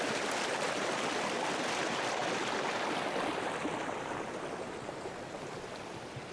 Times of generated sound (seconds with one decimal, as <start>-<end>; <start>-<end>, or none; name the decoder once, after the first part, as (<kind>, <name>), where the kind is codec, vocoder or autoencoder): none